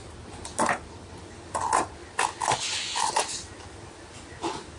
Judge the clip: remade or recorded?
recorded